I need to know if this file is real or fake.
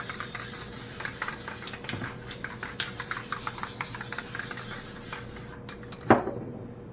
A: real